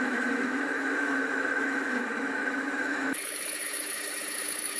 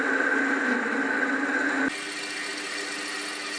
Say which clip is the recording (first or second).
second